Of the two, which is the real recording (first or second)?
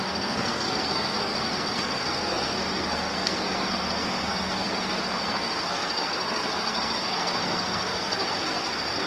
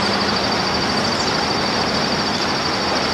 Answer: second